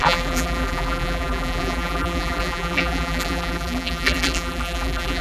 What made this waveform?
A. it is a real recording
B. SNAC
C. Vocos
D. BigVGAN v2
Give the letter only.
D